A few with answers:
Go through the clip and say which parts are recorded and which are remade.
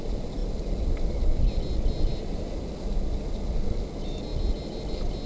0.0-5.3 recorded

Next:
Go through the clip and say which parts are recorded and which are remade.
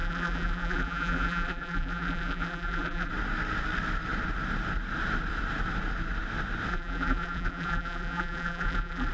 0.0-3.1 remade; 3.1-6.7 recorded; 6.7-9.1 remade